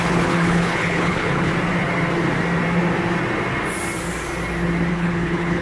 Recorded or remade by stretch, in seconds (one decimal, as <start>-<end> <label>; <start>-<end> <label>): 0.0-1.5 remade; 1.5-4.9 recorded; 4.9-5.6 remade